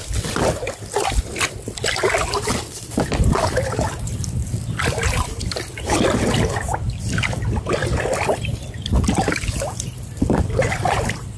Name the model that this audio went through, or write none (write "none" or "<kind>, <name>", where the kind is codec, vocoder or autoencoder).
vocoder, BigVGAN v2